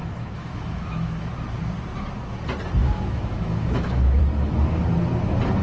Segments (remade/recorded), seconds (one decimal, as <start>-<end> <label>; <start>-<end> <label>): 0.0-1.3 remade; 1.3-2.8 recorded; 2.8-4.2 remade; 4.2-5.6 recorded